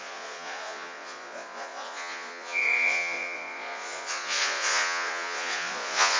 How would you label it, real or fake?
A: fake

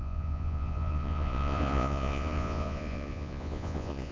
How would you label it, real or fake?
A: fake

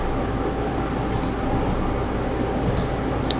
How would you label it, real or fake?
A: real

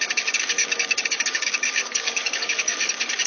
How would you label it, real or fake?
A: fake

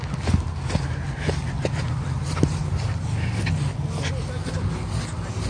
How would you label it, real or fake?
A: real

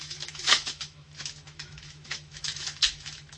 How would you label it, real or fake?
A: fake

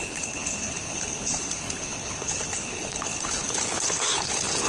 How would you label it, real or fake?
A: fake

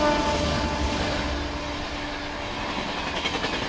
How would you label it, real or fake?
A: real